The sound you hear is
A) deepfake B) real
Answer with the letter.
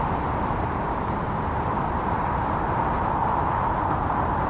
A